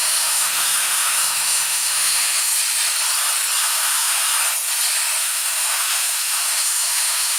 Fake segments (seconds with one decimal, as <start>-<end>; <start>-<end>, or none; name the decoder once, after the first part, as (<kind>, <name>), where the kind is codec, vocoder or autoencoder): 0.0-2.5 (autoencoder, DAC-VAE); 3.6-4.3; 5.2-7.4